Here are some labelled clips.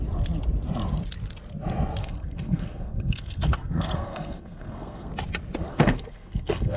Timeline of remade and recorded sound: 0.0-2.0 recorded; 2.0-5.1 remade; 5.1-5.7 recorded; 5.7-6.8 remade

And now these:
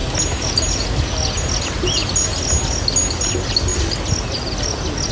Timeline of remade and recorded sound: 0.0-5.1 recorded

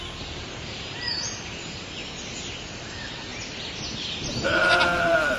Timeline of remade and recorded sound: 0.0-2.0 remade; 2.0-2.7 recorded; 2.7-3.3 remade; 3.3-4.6 recorded; 4.6-5.4 remade

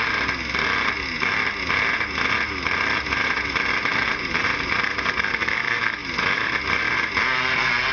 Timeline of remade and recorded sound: 0.0-3.9 recorded; 3.9-4.4 remade; 4.4-7.9 recorded

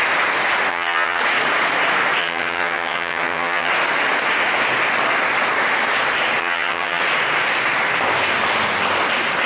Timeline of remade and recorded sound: 0.0-0.7 recorded; 0.7-1.2 remade; 1.2-2.2 recorded; 2.2-3.7 remade; 3.7-6.4 recorded; 6.4-7.0 remade; 7.0-9.5 recorded

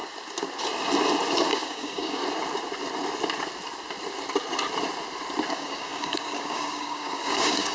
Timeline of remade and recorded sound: 0.0-1.5 recorded; 1.5-2.2 remade; 2.2-5.5 recorded; 5.5-7.7 remade

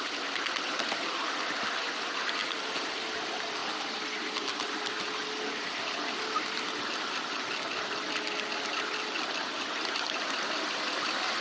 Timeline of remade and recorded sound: 0.0-2.4 recorded; 2.4-3.0 remade; 3.0-11.4 recorded